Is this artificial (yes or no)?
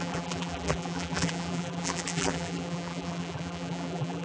yes